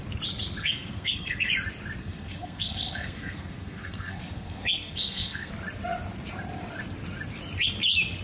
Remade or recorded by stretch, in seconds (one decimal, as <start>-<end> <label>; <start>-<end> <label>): 0.0-0.6 recorded; 0.6-1.5 remade; 1.5-2.0 recorded; 2.0-5.5 remade; 5.5-8.2 recorded